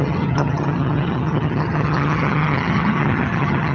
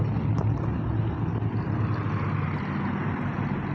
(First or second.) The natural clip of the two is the second